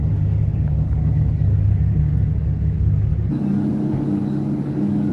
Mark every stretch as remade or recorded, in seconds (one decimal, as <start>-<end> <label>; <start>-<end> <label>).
0.0-3.1 remade; 3.1-3.7 recorded; 3.7-5.1 remade